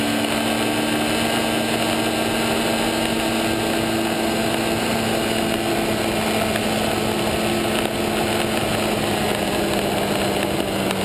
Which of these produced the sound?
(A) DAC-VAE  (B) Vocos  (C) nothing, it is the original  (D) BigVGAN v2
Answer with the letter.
C